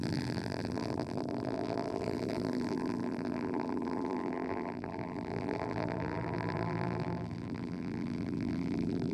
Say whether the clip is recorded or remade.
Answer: remade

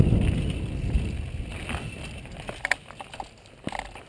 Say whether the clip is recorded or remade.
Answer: recorded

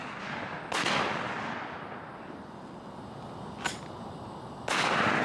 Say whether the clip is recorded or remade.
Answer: recorded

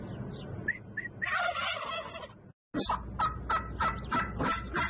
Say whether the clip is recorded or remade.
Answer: recorded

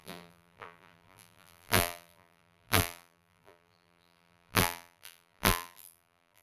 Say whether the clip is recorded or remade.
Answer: remade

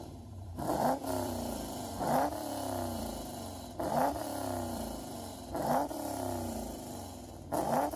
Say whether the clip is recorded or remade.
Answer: remade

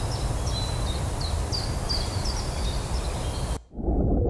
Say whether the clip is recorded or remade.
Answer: recorded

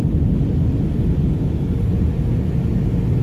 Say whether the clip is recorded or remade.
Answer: recorded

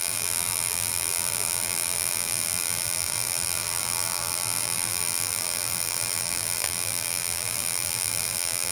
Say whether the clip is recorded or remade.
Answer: remade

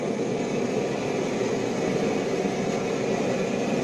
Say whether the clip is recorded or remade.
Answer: recorded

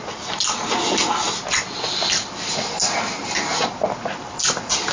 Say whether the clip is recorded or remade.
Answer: recorded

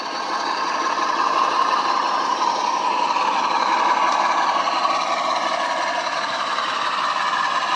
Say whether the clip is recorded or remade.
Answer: recorded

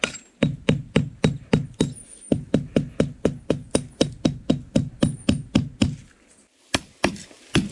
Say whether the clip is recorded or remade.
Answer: recorded